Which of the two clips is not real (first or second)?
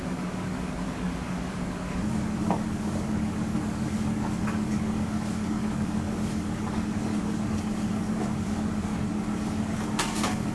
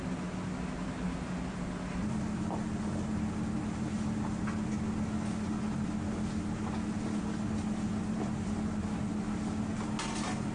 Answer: first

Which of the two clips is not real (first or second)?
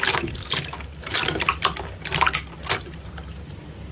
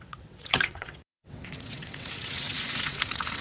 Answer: second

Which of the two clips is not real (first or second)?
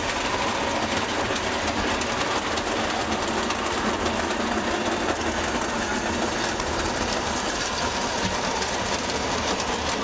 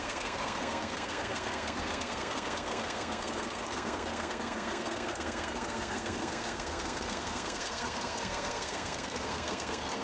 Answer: second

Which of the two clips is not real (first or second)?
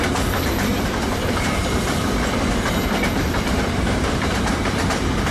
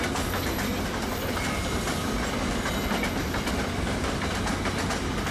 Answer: first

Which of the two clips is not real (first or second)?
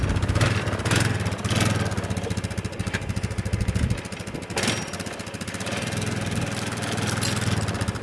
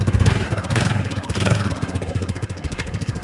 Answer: second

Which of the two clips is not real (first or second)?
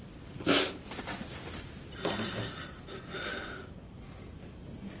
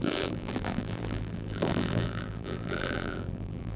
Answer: second